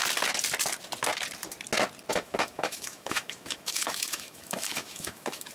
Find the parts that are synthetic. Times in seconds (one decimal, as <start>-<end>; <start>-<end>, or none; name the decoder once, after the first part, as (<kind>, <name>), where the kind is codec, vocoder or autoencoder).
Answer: 2.1-5.5 (autoencoder, DAC-VAE)